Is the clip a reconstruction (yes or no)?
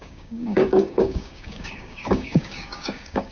yes